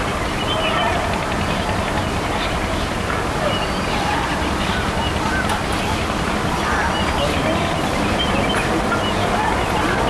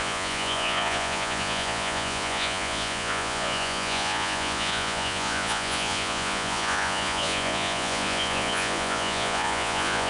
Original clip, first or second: first